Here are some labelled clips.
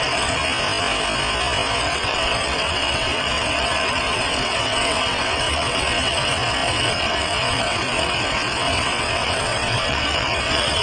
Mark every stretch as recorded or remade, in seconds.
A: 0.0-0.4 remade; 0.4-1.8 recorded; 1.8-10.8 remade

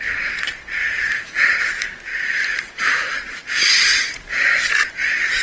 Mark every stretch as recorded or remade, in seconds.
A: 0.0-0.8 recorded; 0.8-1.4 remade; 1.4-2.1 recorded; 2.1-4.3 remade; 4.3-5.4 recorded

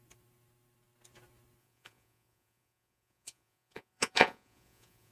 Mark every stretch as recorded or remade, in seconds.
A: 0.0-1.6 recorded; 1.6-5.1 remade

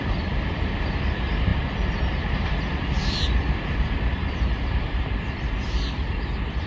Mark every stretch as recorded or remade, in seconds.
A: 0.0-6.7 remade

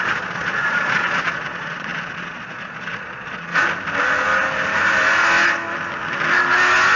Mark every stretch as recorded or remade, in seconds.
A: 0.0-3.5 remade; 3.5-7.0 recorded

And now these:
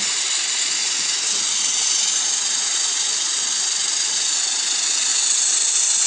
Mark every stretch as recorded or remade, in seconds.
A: 0.0-0.8 recorded; 0.8-3.4 remade; 3.4-3.8 recorded; 3.8-4.4 remade; 4.4-6.1 recorded